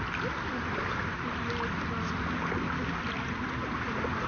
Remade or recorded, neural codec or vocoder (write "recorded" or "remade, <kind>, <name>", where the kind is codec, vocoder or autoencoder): recorded